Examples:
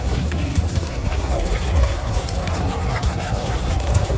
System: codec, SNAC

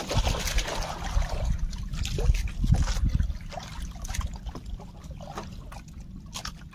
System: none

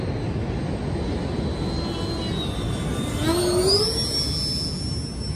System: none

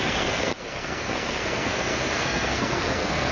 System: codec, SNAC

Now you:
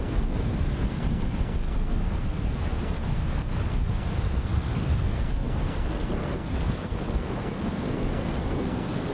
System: codec, SNAC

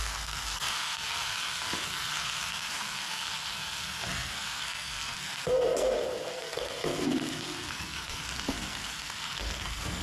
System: codec, SNAC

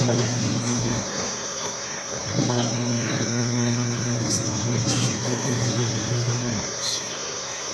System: codec, SNAC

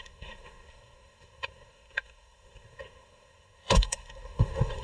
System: codec, SNAC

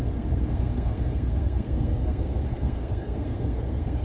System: codec, SNAC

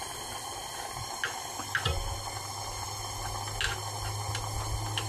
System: none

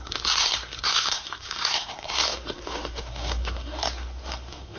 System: codec, SNAC